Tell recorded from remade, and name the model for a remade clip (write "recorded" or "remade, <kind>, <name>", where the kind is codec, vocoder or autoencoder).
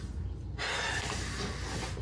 recorded